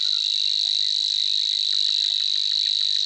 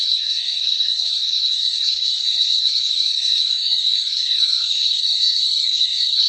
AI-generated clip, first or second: second